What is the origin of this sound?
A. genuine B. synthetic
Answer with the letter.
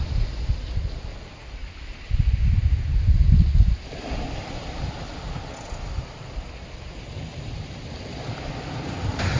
A